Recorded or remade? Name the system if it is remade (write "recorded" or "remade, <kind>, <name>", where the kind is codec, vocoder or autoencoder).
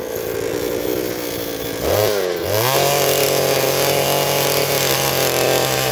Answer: recorded